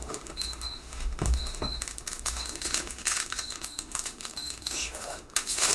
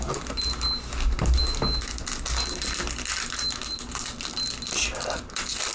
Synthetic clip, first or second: first